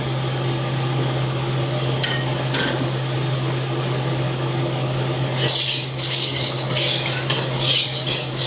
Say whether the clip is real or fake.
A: fake